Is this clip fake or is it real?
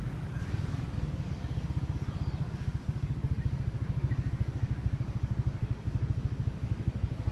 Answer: fake